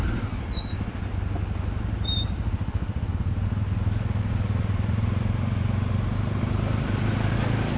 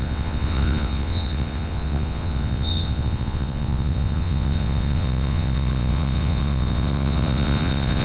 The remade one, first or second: second